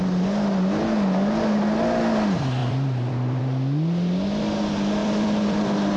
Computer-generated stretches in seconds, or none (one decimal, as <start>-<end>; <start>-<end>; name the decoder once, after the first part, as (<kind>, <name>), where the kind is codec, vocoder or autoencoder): 2.6-3.4 (vocoder, BigVGAN v2); 5.0-6.0